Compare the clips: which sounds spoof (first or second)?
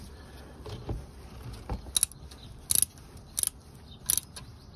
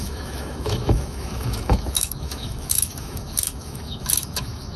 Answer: second